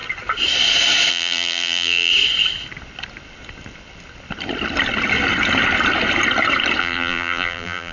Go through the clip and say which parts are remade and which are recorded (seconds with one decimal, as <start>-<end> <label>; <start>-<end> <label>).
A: 0.0-1.1 recorded; 1.1-2.1 remade; 2.1-6.8 recorded; 6.8-7.9 remade